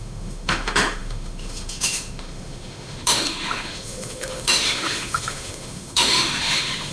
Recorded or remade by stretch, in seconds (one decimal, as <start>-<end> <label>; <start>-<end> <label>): 0.0-6.9 remade